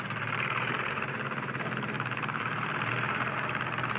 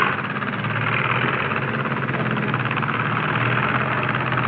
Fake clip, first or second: first